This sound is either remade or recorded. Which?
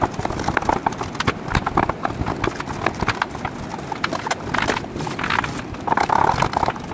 recorded